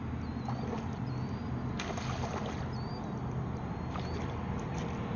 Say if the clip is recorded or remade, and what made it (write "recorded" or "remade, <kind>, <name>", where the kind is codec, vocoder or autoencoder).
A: recorded